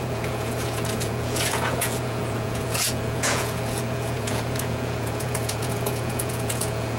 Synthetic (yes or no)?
yes